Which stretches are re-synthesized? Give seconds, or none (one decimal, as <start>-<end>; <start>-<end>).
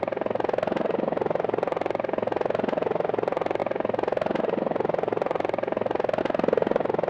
none